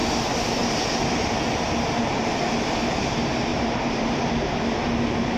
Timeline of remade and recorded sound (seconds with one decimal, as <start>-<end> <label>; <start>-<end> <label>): 0.0-3.5 recorded; 3.5-4.1 remade; 4.1-5.4 recorded